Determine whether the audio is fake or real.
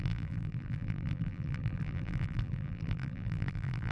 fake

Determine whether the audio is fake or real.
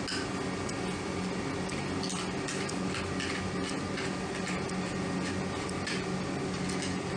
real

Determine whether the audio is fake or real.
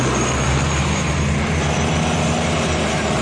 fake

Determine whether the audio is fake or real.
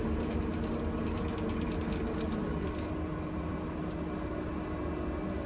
real